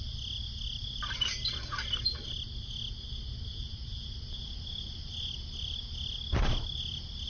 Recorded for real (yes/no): yes